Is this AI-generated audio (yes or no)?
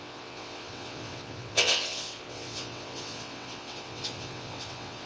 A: yes